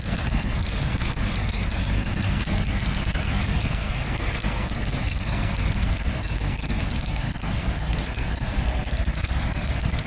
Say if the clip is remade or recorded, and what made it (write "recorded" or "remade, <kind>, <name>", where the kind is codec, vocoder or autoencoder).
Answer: remade, codec, SNAC